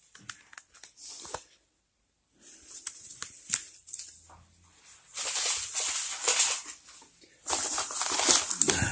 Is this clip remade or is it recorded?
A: recorded